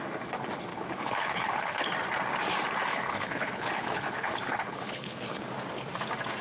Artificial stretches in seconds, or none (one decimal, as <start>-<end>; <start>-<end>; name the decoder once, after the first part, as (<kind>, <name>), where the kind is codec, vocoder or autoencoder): 0.7-1.9 (codec, HILCodec); 2.9-5.5